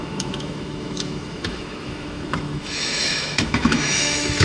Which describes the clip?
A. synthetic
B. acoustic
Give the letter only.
A